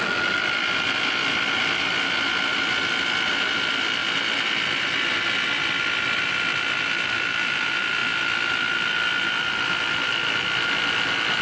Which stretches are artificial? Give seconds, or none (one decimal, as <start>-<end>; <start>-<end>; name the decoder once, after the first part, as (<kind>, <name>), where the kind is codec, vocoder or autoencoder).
none

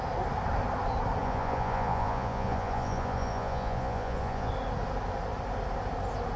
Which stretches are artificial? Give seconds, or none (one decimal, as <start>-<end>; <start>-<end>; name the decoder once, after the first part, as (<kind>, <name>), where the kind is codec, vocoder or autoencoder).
1.2-4.5 (vocoder, Vocos)